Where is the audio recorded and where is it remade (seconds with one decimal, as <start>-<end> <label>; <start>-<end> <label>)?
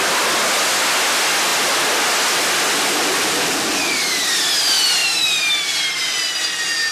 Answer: 0.0-6.9 recorded